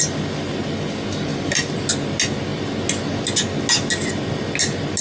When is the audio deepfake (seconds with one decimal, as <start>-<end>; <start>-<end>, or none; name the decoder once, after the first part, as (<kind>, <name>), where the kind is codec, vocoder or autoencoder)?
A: 1.3-1.9 (vocoder, BigVGAN v2)